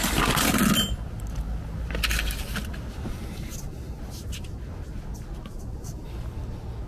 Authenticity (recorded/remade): recorded